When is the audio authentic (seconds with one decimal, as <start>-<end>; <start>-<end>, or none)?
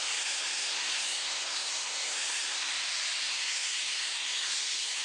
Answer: 2.7-3.2